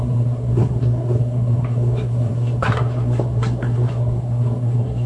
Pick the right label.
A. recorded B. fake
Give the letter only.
B